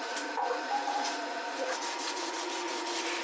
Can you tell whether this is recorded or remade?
remade